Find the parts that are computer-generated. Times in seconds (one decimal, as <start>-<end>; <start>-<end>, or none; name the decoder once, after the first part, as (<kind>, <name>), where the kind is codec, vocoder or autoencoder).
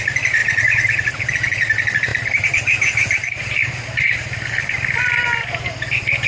0.4-1.1 (vocoder, Vocos)